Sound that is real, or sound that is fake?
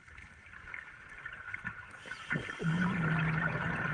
real